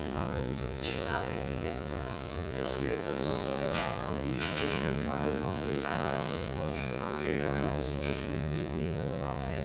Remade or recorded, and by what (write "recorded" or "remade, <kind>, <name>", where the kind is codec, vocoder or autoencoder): remade, vocoder, Vocos